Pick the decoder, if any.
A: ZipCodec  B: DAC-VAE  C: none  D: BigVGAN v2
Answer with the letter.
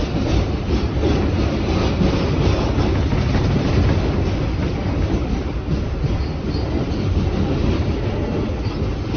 C